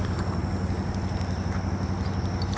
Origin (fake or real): real